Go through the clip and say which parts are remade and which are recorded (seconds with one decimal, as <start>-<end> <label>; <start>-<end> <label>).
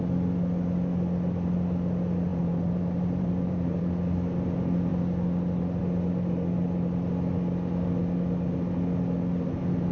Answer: 0.0-2.3 recorded; 2.3-3.8 remade; 3.8-9.9 recorded